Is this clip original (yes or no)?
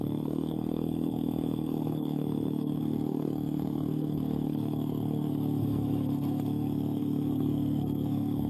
no